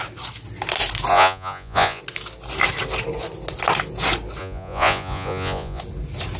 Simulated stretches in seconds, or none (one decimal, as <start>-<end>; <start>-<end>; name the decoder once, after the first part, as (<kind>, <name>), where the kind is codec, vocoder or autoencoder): 1.1-2.0 (vocoder, Vocos); 4.4-5.8